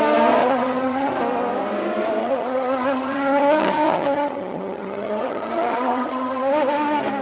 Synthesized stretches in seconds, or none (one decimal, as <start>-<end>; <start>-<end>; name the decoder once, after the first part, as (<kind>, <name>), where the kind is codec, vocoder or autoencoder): 0.4-1.1 (vocoder, HiFi-GAN); 2.2-6.5